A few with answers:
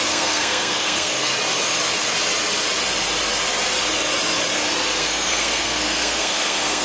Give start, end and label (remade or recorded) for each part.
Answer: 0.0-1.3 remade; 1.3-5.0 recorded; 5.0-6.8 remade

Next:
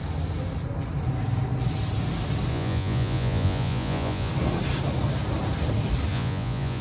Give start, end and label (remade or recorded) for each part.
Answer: 0.0-2.5 recorded; 2.5-4.3 remade; 4.3-6.1 recorded; 6.1-6.8 remade

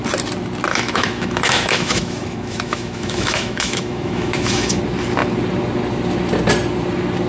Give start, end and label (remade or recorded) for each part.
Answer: 0.0-0.7 recorded; 0.7-4.8 remade; 4.8-7.3 recorded

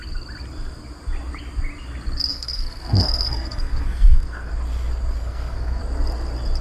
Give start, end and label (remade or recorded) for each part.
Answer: 0.0-2.3 recorded; 2.3-4.5 remade; 4.5-5.2 recorded; 5.2-5.8 remade; 5.8-6.6 recorded

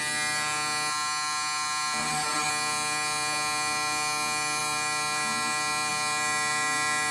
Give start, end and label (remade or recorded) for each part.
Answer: 0.0-2.0 recorded; 2.0-2.5 remade; 2.5-7.1 recorded

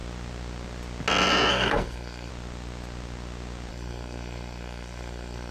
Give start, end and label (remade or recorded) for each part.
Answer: 0.0-1.5 recorded; 1.5-2.3 remade; 2.3-3.7 recorded; 3.7-5.5 remade

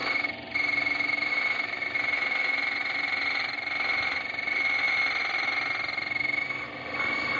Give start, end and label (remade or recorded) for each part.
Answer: 0.0-7.4 recorded

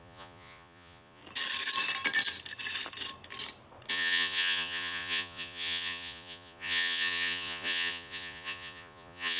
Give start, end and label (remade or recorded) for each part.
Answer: 0.0-1.2 remade; 1.2-3.9 recorded; 3.9-9.4 remade